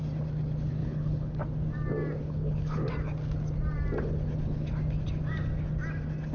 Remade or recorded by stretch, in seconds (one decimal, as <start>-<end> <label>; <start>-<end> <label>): 0.0-0.8 recorded; 0.8-1.4 remade; 1.4-2.2 recorded; 2.2-2.9 remade; 2.9-6.3 recorded

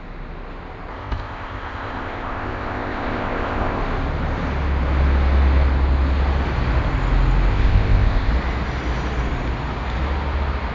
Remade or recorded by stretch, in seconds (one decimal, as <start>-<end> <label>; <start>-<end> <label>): 0.0-0.9 recorded; 0.9-3.8 remade; 3.8-7.5 recorded; 7.5-8.3 remade; 8.3-10.7 recorded

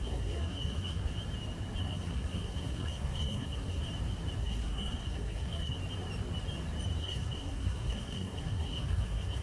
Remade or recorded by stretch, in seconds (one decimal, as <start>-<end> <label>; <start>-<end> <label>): 0.0-1.1 remade; 1.1-1.8 recorded; 1.8-3.8 remade; 3.8-4.4 recorded; 4.4-5.8 remade; 5.8-7.0 recorded; 7.0-9.4 remade

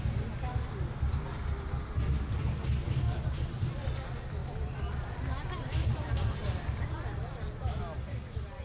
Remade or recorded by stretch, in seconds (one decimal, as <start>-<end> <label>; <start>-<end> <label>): 0.0-8.6 recorded

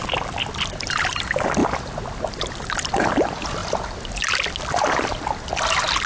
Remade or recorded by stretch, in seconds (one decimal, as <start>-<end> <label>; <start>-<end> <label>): 0.0-6.1 recorded